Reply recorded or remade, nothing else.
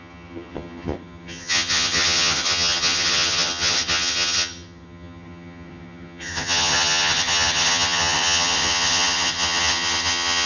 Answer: remade